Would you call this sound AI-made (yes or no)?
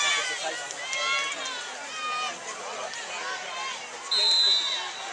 no